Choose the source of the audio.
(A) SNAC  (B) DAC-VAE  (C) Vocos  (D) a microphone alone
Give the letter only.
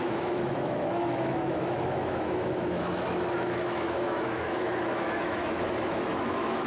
B